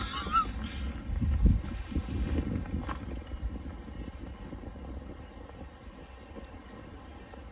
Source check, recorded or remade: recorded